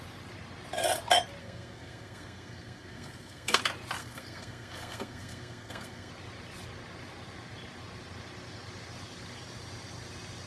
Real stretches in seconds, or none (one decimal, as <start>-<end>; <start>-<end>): 0.0-1.4; 3.6-4.0; 6.1-10.5